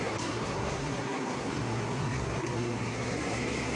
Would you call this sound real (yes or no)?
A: no